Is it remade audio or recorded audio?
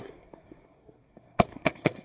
remade